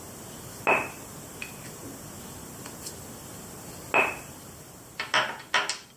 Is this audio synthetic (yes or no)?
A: no